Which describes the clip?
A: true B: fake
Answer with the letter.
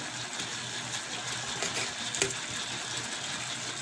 A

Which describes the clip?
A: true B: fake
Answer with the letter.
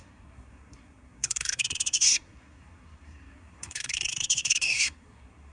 B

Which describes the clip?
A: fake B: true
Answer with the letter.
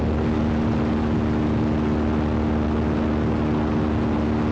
B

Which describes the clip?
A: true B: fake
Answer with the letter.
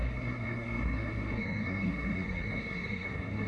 B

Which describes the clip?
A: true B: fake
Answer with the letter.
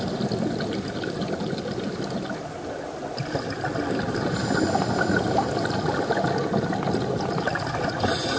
A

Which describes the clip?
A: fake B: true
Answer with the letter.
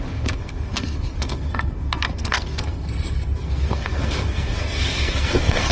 A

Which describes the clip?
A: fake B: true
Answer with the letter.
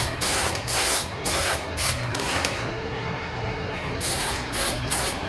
A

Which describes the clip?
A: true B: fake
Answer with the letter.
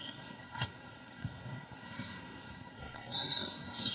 B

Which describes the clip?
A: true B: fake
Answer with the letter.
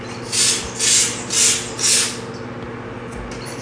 A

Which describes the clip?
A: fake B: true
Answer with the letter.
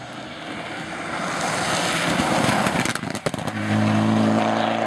B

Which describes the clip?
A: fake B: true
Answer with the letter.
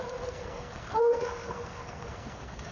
A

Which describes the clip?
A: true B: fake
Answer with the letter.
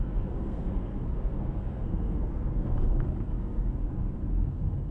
B